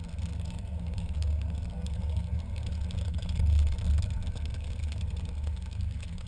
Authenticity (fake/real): fake